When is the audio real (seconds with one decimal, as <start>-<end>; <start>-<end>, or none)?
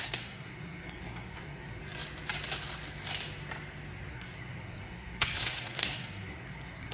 1.8-4.1